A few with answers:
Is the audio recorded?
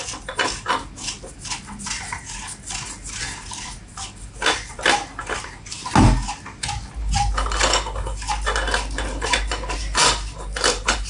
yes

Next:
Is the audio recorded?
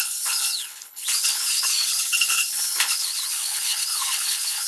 no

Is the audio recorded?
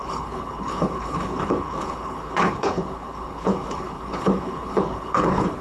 no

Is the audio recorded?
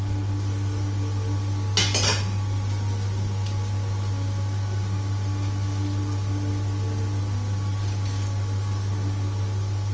yes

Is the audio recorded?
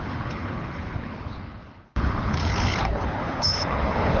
no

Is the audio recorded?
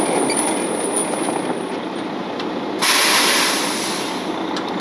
yes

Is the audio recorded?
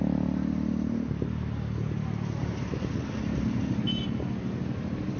yes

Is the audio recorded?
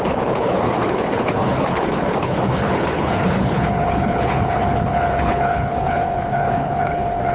no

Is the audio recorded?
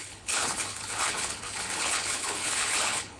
no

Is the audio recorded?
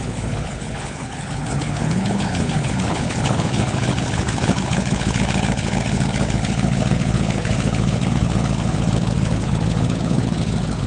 no